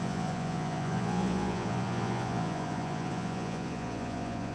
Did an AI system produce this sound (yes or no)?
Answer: yes